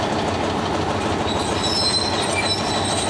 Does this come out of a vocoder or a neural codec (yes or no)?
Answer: no